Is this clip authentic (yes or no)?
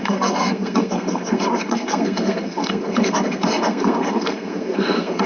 no